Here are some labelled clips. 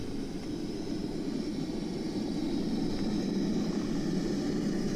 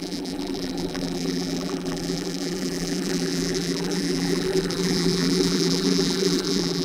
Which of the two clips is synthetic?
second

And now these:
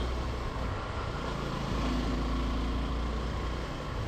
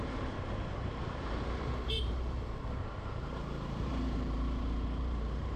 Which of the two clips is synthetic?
second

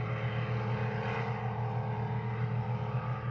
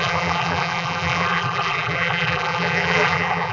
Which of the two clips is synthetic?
second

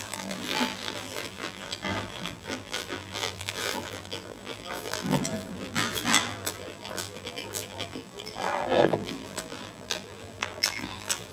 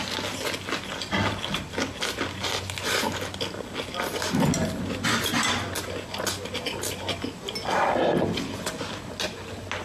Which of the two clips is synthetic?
first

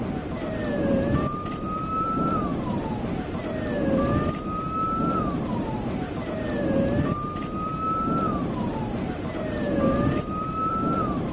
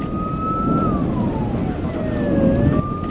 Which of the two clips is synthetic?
first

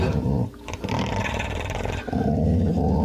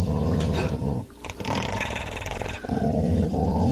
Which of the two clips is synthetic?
second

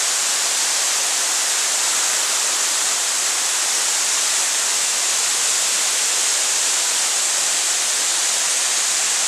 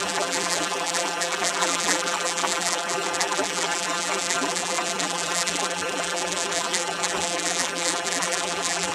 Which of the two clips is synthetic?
second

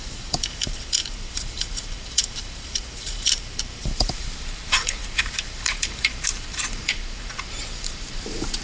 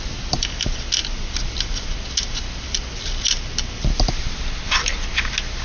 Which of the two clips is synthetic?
first